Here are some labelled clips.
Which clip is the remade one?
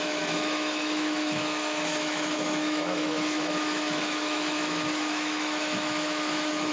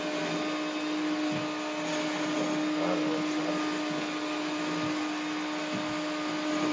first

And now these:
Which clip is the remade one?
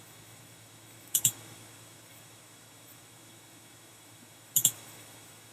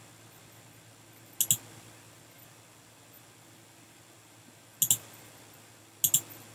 first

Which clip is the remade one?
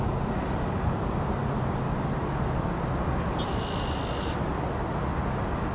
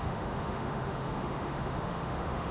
second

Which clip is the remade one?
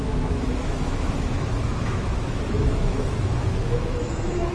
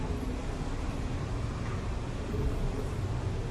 first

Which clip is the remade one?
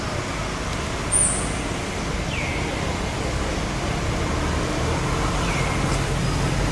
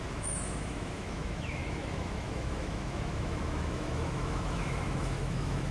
second